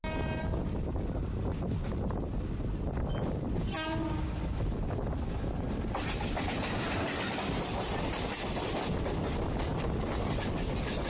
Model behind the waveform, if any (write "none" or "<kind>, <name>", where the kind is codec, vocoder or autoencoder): none